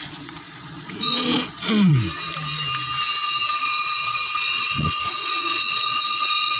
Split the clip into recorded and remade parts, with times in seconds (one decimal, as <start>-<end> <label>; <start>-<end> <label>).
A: 0.0-1.9 remade; 1.9-3.6 recorded; 3.6-6.6 remade